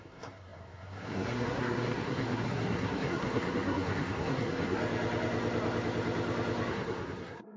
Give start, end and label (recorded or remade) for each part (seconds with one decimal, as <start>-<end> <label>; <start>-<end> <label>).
0.0-4.8 remade; 4.8-6.7 recorded; 6.7-7.6 remade

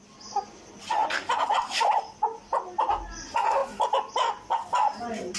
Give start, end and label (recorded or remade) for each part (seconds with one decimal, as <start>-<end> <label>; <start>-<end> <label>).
0.0-5.4 recorded

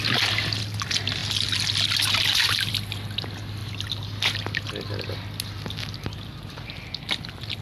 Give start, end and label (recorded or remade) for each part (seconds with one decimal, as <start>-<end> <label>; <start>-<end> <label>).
0.0-7.6 recorded

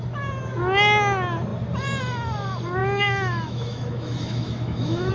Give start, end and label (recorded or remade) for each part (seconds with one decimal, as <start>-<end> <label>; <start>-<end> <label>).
0.0-2.8 recorded; 2.8-5.1 remade

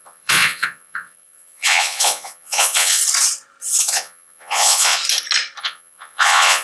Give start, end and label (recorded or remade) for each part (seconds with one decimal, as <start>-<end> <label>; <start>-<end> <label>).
0.0-3.0 remade; 3.0-3.8 recorded; 3.8-5.0 remade; 5.0-5.6 recorded; 5.6-6.6 remade

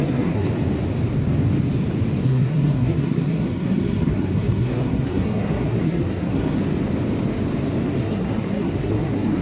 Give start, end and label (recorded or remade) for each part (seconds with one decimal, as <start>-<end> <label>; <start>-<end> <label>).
0.0-0.5 remade; 0.5-2.2 recorded; 2.2-6.6 remade; 6.6-8.0 recorded; 8.0-9.4 remade

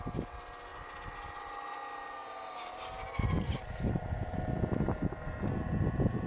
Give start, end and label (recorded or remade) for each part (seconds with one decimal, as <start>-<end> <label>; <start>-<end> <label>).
0.0-6.3 recorded

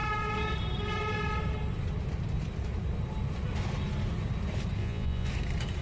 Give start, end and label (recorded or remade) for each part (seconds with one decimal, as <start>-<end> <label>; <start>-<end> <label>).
0.0-4.8 recorded; 4.8-5.3 remade; 5.3-5.8 recorded